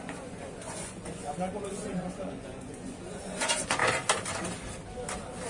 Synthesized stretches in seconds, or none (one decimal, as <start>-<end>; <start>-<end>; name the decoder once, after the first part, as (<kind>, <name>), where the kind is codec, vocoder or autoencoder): 0.0-3.8 (vocoder, Vocos)